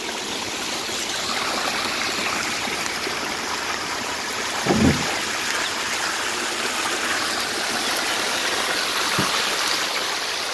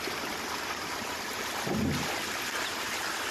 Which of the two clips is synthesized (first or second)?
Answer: first